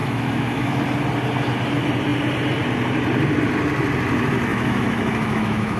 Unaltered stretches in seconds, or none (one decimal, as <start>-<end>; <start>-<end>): 0.8-4.5